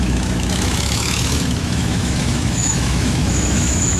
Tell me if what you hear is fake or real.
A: fake